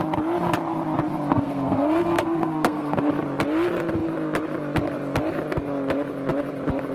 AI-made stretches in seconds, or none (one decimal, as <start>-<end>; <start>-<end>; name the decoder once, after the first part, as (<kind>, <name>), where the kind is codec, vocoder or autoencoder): 1.3-3.1 (codec, SNAC)